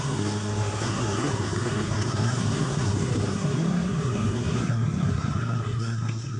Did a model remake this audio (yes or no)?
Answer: yes